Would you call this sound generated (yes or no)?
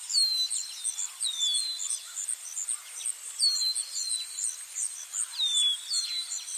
no